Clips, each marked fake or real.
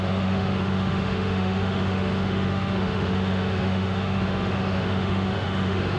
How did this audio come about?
fake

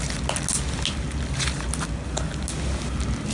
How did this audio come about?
real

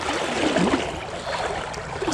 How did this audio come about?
real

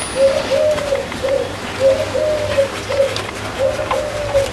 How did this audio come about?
real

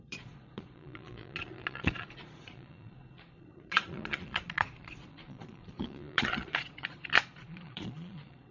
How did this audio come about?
fake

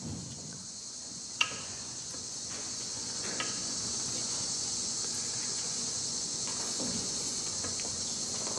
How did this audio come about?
fake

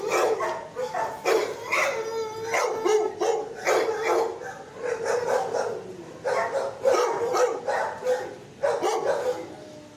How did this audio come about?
real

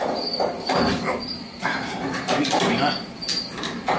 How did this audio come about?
fake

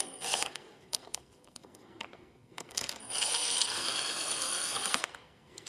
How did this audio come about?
fake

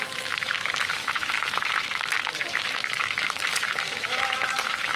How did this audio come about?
fake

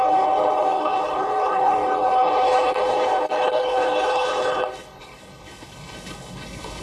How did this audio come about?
fake